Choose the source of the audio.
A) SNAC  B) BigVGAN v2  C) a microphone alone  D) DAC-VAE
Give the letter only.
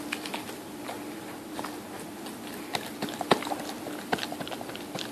C